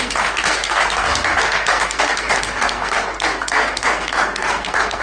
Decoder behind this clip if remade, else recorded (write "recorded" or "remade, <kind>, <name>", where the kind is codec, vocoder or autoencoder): remade, codec, SNAC